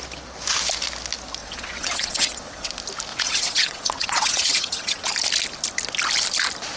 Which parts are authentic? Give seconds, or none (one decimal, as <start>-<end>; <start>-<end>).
0.0-1.4; 2.7-3.1; 5.1-6.8